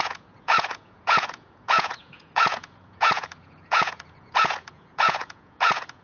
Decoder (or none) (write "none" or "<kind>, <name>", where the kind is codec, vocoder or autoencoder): vocoder, Vocos